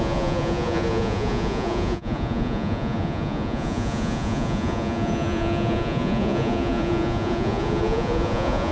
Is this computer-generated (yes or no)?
yes